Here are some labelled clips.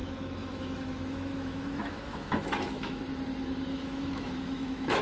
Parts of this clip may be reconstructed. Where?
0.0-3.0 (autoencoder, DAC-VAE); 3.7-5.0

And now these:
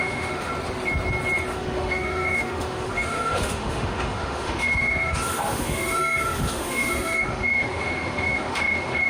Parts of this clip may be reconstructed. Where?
0.0-0.5 (autoencoder, DAC-VAE); 1.5-9.1

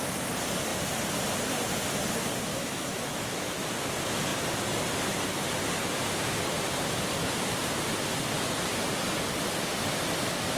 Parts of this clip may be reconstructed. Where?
2.5-3.7 (autoencoder, DAC-VAE)

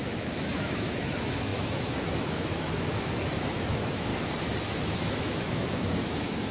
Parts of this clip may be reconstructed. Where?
0.0-4.1 (autoencoder, DAC-VAE); 4.8-6.5

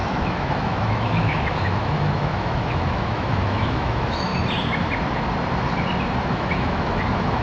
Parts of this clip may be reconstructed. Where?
0.0-4.3 (autoencoder, DAC-VAE); 6.2-7.4

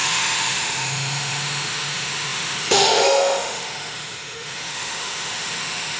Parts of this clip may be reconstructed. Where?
0.0-6.0 (autoencoder, DAC-VAE)